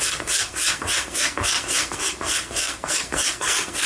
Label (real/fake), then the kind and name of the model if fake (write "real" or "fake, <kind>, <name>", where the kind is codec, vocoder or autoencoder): fake, codec, SNAC